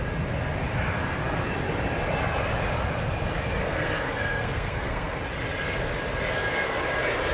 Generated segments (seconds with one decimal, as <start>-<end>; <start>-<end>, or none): 3.6-5.2